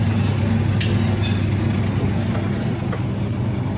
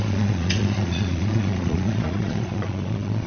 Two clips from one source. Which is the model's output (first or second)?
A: second